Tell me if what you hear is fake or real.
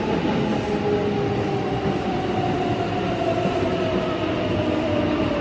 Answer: real